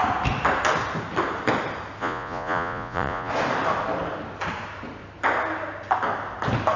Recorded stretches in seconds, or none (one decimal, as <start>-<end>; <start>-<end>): 0.0-2.0; 3.3-6.8